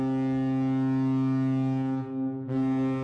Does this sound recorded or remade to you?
recorded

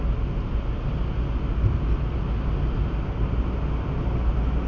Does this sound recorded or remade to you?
recorded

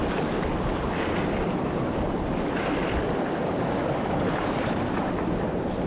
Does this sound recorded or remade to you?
recorded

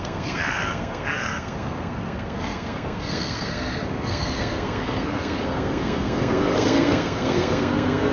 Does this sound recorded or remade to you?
remade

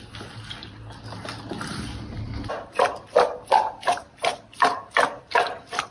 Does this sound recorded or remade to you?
recorded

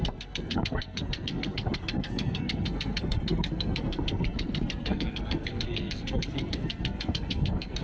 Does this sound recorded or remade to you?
remade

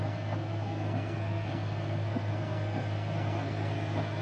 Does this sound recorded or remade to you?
remade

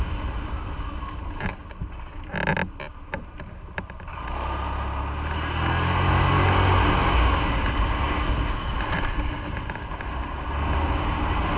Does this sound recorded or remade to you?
recorded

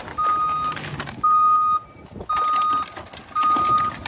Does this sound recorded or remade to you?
recorded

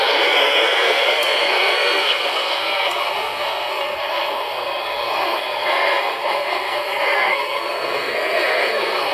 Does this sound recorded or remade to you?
remade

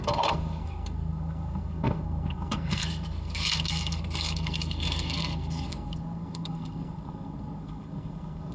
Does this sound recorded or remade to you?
remade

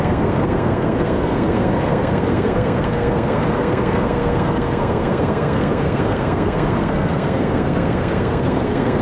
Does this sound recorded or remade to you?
remade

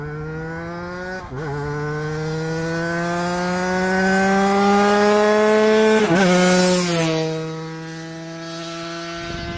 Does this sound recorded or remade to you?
recorded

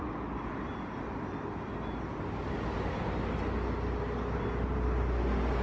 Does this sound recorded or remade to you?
recorded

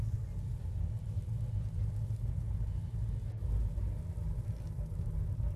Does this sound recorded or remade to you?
recorded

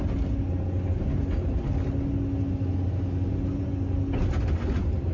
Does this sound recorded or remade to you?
recorded